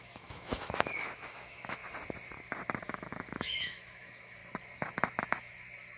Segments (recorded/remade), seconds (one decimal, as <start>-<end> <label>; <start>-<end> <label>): 0.0-1.8 remade; 1.8-2.8 recorded; 2.8-4.4 remade; 4.4-6.0 recorded